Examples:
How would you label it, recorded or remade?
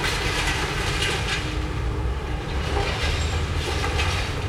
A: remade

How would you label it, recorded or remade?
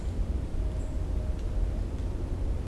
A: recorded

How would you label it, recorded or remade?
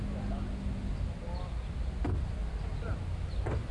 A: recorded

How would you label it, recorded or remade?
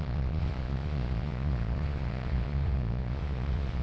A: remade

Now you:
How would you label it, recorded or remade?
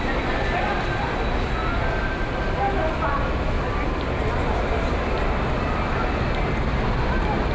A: recorded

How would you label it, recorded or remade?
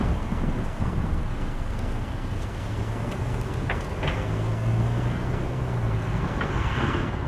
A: remade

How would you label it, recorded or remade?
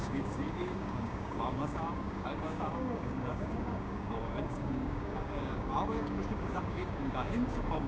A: remade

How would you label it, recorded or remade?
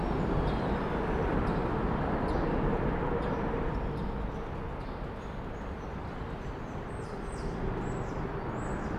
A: recorded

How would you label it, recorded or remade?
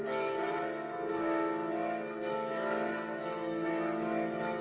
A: remade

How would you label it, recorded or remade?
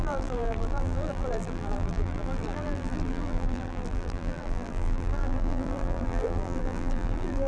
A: remade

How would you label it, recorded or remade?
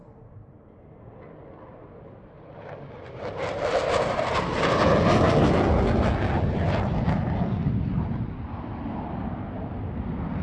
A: recorded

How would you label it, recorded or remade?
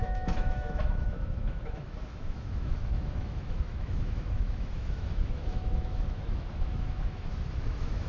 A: remade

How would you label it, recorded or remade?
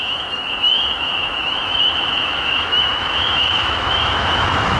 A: remade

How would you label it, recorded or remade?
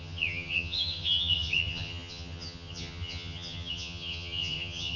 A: remade